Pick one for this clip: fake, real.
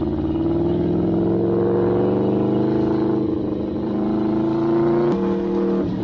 real